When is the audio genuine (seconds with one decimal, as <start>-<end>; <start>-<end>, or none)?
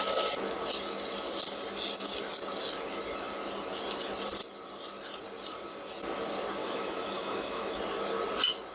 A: 0.0-6.6; 7.8-8.7